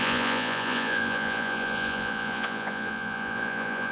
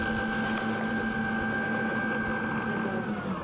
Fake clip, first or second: first